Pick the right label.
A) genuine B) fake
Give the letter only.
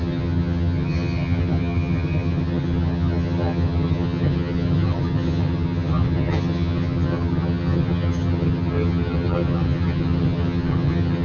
B